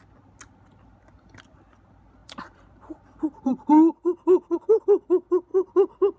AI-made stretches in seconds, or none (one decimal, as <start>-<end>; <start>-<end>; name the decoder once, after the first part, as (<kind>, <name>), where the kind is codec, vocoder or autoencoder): 2.2-4.8 (vocoder, BigVGAN v2); 5.5-6.2